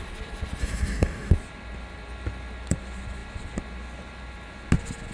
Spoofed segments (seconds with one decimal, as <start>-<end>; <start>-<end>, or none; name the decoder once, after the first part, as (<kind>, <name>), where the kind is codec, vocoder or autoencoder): 0.6-1.3 (codec, DAC)